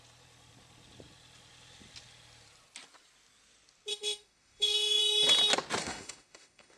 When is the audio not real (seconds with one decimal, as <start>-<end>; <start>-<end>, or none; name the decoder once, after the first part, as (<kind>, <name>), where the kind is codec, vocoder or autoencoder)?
3.9-5.0 (autoencoder, DAC-VAE); 5.8-6.8